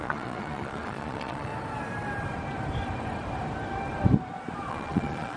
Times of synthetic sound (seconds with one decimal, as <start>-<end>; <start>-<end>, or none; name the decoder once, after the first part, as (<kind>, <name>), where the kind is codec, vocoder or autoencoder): 0.0-1.5 (vocoder, Vocos); 4.7-5.4